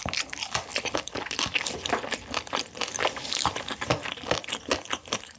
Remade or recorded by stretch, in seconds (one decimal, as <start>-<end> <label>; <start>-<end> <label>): 0.0-5.4 remade